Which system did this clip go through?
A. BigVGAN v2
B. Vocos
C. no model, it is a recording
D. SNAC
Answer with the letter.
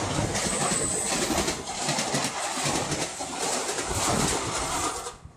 C